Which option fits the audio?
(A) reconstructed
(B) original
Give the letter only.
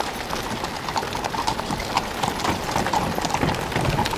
B